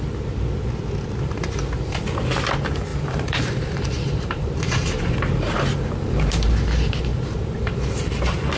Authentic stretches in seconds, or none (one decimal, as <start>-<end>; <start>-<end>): 0.0-2.9; 6.5-7.1; 8.0-8.6